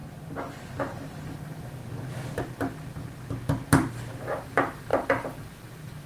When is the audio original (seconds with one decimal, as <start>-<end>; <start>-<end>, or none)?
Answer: 1.8-4.2